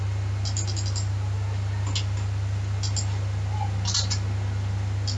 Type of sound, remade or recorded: recorded